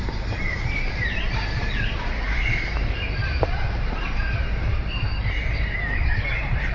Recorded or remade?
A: remade